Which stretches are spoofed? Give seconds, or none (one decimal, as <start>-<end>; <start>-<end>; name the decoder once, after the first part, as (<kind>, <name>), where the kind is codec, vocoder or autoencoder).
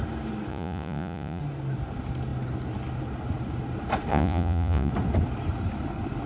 0.5-1.4 (vocoder, Vocos); 4.1-4.9